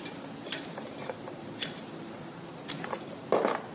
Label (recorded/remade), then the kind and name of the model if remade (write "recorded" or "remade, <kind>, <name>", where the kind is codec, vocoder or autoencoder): remade, vocoder, BigVGAN v2